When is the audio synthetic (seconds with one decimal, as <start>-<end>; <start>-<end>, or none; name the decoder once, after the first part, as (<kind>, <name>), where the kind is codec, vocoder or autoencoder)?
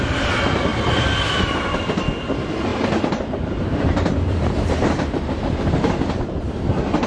0.7-1.8 (vocoder, BigVGAN v2); 2.7-5.9